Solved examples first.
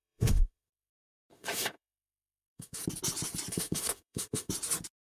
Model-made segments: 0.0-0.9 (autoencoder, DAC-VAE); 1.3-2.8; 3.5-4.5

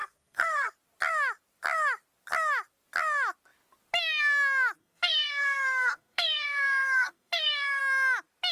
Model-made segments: 0.0-0.7 (codec, SNAC); 4.8-7.8

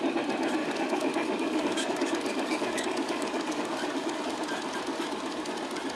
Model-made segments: 0.6-4.2 (codec, DAC)

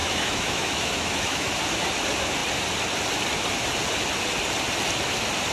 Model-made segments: 0.0-1.5 (autoencoder, DAC-VAE)

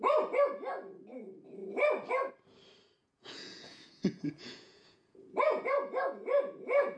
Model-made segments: 3.0-7.0 (vocoder, Vocos)

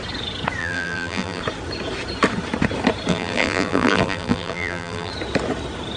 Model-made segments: 0.6-1.4 (vocoder, BigVGAN v2); 3.1-5.1